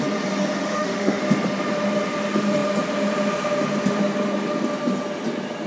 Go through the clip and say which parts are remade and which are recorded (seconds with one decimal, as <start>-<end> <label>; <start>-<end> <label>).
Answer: 0.0-0.6 recorded; 0.6-1.2 remade; 1.2-5.7 recorded